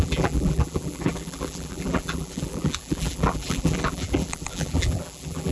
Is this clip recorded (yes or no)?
no